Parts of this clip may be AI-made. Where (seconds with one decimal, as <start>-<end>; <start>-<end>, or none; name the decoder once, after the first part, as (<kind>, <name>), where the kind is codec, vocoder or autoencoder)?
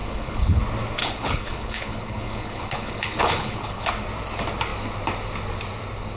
0.0-0.6 (codec, HILCodec); 1.0-3.9